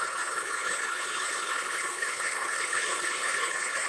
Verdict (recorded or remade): remade